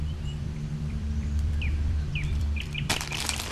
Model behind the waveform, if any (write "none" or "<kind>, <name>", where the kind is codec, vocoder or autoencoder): vocoder, BigVGAN v2